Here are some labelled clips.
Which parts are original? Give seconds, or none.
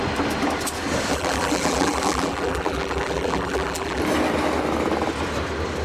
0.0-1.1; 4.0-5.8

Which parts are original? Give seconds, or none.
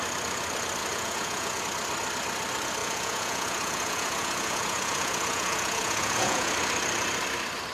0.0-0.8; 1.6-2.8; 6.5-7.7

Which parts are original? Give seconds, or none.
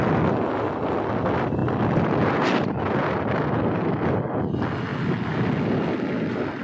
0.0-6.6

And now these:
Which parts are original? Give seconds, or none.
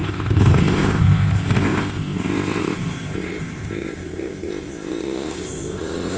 none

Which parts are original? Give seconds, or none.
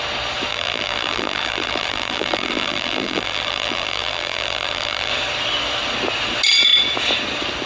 0.0-0.5; 5.1-7.7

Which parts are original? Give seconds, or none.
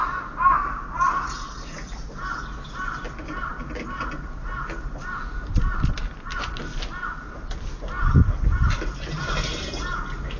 0.0-10.4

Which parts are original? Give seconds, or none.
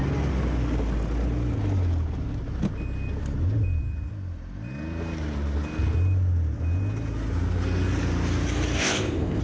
0.0-8.8